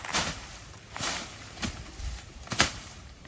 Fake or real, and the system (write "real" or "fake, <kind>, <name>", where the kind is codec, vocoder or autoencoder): fake, vocoder, BigVGAN v2